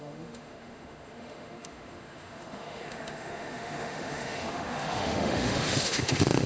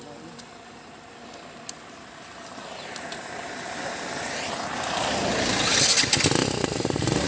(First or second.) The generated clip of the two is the first